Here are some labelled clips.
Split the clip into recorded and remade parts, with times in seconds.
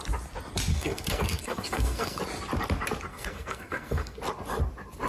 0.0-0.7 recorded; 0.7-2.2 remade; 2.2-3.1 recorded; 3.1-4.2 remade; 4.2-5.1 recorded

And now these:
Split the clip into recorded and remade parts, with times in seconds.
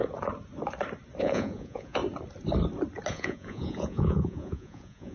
0.0-1.2 recorded; 1.2-2.0 remade; 2.0-3.1 recorded; 3.1-5.1 remade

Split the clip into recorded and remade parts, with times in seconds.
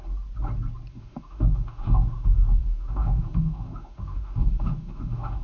0.0-0.9 recorded; 0.9-5.4 remade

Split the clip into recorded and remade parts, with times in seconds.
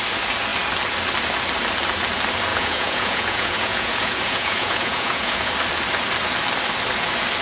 0.0-2.5 recorded; 2.5-5.5 remade; 5.5-7.4 recorded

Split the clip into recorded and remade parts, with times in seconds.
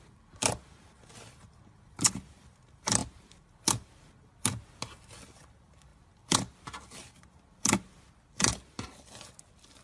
0.0-9.8 recorded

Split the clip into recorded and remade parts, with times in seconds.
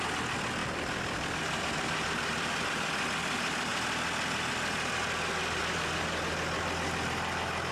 0.0-7.7 recorded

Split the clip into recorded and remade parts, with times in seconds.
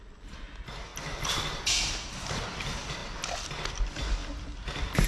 0.0-5.1 recorded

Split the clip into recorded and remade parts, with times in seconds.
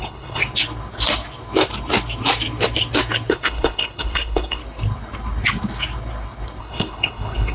0.0-0.4 remade; 0.4-3.3 recorded; 3.3-4.6 remade; 4.6-6.6 recorded; 6.6-7.5 remade